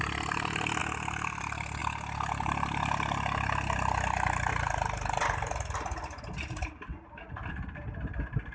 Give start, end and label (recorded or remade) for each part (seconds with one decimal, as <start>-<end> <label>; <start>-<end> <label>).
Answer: 0.0-8.5 recorded